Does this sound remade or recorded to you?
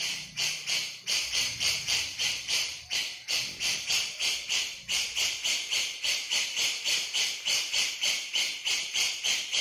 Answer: remade